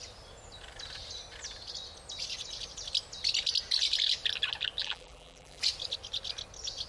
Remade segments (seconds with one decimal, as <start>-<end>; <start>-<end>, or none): 4.8-5.6